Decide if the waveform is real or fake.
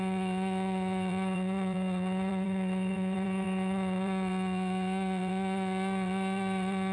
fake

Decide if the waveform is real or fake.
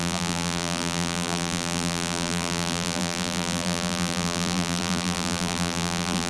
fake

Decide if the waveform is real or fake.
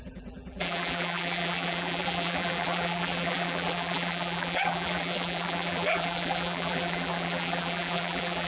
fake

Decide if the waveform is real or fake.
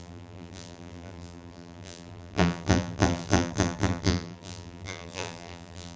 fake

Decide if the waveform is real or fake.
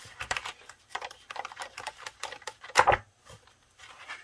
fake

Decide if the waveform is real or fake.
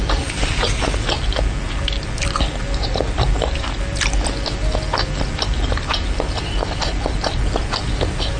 fake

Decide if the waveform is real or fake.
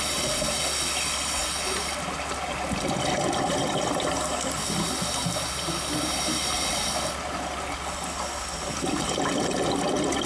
real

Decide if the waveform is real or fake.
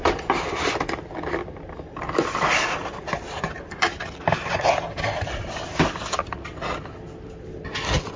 real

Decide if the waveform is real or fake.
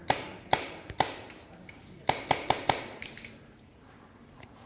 fake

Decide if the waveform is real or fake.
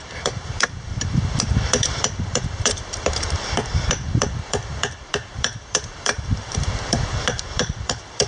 fake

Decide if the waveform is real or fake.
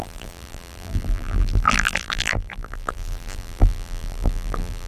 fake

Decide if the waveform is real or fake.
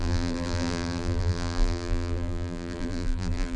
fake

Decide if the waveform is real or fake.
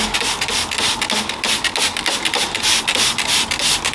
real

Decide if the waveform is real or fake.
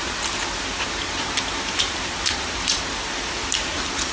fake